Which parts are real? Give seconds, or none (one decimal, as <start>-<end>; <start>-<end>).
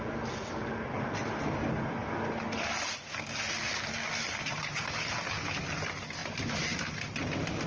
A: 0.0-7.7